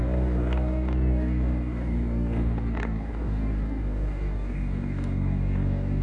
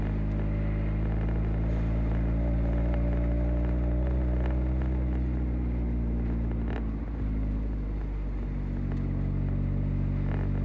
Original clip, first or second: second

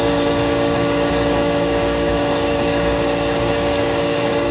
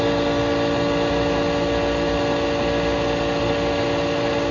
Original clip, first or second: second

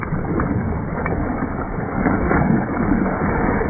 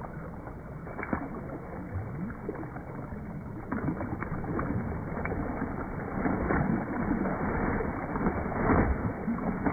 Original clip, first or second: second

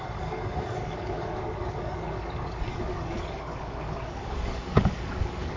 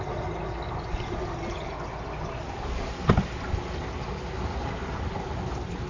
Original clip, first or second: second